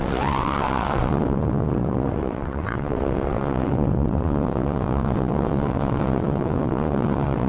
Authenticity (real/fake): fake